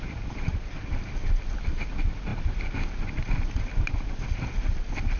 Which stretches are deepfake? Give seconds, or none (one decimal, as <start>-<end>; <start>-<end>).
none